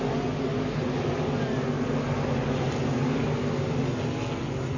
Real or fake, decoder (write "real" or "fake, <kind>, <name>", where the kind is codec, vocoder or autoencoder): real